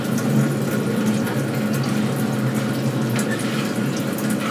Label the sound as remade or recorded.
recorded